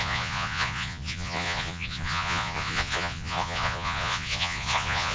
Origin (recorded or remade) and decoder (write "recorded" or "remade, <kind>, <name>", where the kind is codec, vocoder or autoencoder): remade, vocoder, Vocos